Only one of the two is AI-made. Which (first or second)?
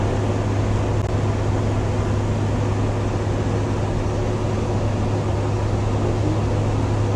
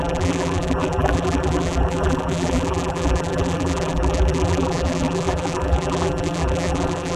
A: second